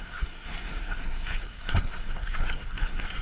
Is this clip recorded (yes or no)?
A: no